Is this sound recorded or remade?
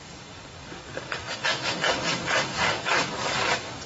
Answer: remade